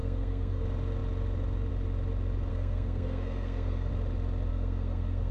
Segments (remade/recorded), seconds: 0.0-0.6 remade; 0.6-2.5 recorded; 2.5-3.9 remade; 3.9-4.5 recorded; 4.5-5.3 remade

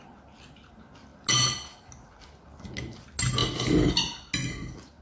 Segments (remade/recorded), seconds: 0.0-5.0 recorded

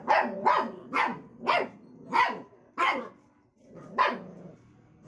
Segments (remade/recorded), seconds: 0.0-5.1 recorded